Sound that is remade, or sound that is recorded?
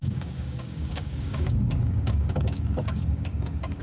remade